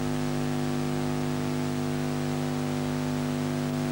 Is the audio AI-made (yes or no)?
no